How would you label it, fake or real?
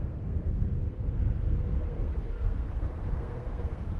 fake